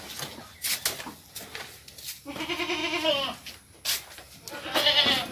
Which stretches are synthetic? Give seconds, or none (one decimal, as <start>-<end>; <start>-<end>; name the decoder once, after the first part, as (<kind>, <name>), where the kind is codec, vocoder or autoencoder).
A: none